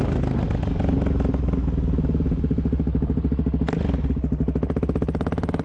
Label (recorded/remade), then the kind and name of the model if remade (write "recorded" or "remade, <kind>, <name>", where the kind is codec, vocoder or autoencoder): recorded